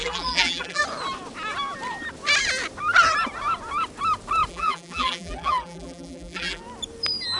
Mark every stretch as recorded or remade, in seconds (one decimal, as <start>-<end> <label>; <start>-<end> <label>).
0.0-0.8 remade; 0.8-4.5 recorded; 4.5-6.6 remade; 6.6-7.4 recorded